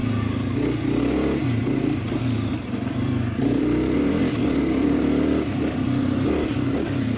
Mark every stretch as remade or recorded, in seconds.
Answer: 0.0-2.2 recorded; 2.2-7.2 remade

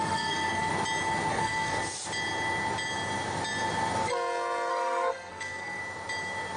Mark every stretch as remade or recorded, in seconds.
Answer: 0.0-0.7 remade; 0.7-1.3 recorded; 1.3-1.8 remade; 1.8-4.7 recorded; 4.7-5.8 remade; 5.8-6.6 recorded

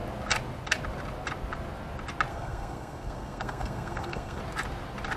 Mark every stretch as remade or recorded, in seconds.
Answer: 0.0-2.3 recorded; 2.3-4.4 remade; 4.4-5.2 recorded

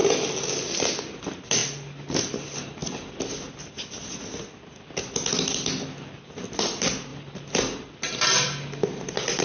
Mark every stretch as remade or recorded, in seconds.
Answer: 0.0-9.4 recorded

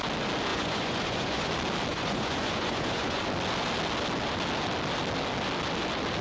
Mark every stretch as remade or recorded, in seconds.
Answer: 0.0-0.5 recorded; 0.5-1.5 remade; 1.5-1.9 recorded; 1.9-3.2 remade; 3.2-6.2 recorded

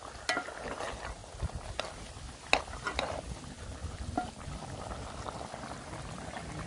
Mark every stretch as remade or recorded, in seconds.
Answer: 0.0-6.7 recorded

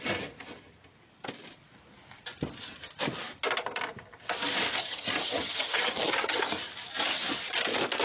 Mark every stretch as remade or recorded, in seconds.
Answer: 0.0-4.8 recorded; 4.8-6.5 remade; 6.5-8.0 recorded